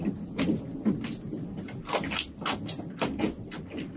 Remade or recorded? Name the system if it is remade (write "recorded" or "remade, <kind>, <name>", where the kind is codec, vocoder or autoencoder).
recorded